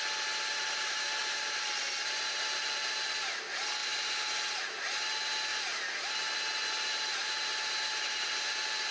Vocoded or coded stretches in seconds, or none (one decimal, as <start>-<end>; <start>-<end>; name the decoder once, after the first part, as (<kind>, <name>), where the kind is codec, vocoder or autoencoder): none